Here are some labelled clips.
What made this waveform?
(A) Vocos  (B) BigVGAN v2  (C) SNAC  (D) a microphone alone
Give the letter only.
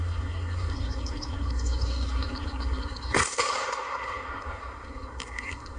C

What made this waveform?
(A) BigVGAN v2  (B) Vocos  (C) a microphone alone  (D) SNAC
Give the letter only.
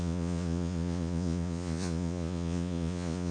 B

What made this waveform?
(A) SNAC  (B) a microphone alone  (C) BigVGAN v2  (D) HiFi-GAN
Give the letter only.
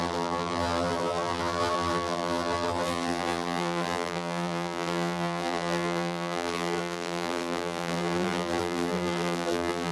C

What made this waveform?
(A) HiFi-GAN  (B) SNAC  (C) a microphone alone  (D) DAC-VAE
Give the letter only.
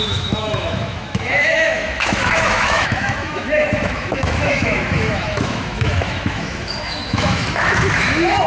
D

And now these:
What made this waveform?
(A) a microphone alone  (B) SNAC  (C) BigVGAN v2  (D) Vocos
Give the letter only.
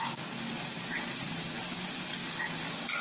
A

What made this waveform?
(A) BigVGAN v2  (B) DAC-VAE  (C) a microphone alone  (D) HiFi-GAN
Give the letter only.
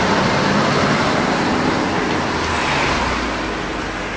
C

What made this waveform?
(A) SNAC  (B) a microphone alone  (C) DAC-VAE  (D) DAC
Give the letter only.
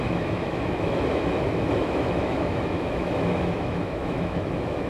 C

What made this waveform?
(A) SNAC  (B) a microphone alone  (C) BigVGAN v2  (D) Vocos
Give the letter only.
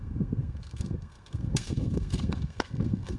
A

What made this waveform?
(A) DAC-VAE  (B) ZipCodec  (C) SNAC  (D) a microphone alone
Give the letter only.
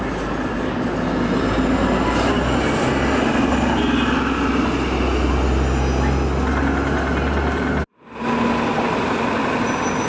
D